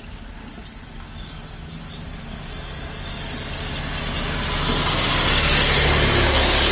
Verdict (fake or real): real